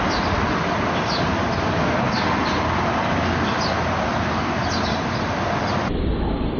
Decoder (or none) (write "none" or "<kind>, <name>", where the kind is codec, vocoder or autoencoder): none